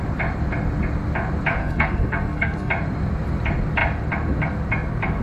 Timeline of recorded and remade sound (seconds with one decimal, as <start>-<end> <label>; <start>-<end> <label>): 0.0-1.6 recorded; 1.6-2.7 remade; 2.7-5.2 recorded